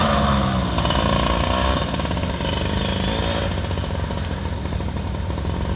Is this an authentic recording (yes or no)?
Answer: yes